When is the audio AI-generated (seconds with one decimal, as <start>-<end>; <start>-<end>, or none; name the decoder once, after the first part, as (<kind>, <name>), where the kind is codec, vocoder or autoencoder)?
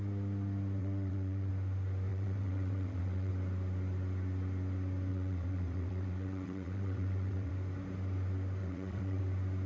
0.8-1.5 (vocoder, WaveNeXt); 2.1-3.3; 5.1-7.5; 8.6-9.2